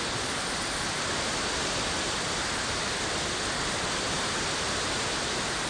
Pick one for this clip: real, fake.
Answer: real